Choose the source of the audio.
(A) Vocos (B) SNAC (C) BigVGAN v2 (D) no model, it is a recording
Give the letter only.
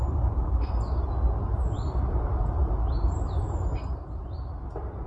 D